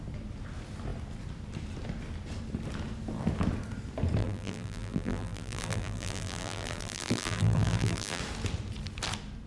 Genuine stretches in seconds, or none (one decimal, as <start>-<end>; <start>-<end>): 0.0-4.2; 8.2-9.5